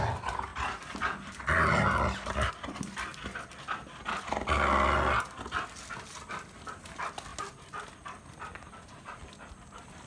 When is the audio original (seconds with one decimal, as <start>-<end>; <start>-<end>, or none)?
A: 0.0-10.1